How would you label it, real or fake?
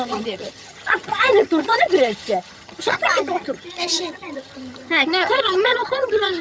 fake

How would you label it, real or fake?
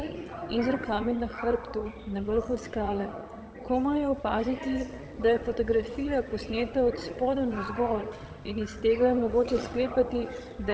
fake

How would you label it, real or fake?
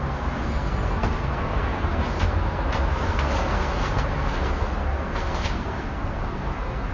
fake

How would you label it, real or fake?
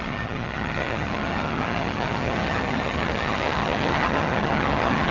fake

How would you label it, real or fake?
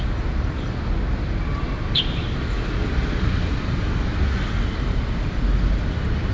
real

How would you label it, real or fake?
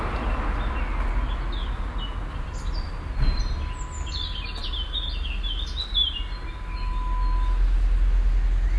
real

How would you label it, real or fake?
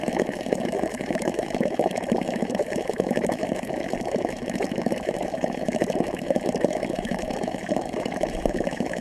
fake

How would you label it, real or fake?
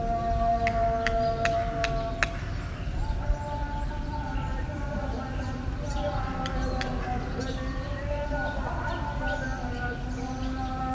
real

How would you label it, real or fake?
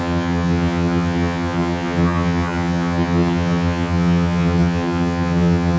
fake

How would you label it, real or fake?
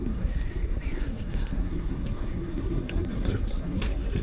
fake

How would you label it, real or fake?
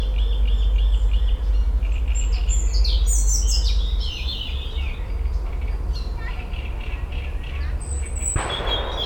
real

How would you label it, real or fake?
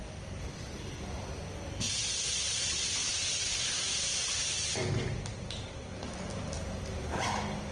real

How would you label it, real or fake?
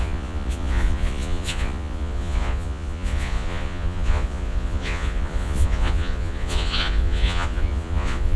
fake